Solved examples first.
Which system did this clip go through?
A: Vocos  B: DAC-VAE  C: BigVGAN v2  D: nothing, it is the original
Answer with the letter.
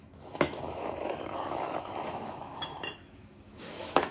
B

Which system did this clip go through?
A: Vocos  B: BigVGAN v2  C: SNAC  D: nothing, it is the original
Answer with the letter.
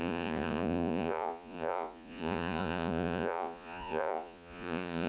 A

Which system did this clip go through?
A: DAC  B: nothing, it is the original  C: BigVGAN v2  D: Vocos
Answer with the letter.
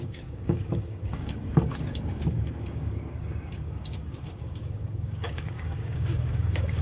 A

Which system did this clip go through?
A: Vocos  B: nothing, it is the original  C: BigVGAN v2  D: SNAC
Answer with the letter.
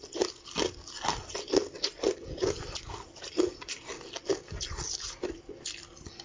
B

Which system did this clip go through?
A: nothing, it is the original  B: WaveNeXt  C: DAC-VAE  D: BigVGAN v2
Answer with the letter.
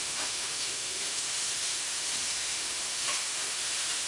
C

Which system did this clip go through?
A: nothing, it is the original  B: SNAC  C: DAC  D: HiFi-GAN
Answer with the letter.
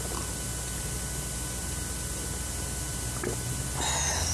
A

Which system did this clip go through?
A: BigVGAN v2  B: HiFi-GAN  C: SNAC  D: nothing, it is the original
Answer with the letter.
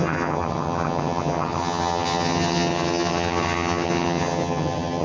B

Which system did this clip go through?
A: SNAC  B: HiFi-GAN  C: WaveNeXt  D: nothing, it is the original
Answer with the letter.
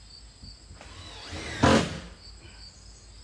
D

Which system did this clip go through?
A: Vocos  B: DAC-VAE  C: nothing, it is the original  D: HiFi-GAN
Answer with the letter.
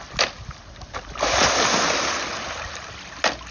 C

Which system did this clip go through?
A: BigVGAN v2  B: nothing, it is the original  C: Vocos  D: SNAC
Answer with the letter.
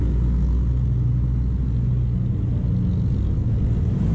B